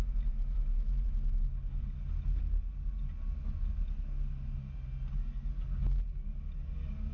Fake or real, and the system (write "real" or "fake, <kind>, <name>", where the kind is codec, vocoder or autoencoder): real